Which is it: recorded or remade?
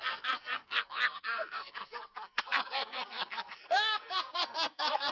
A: remade